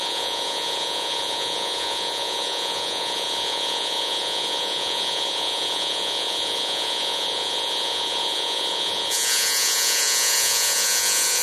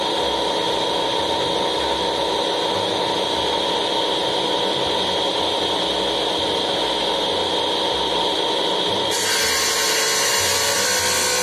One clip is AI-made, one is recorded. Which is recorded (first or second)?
second